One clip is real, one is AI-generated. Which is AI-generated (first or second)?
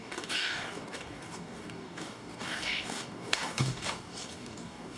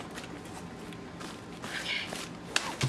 first